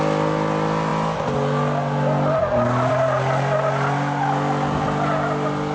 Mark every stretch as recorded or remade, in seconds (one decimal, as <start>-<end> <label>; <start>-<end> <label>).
0.0-5.7 recorded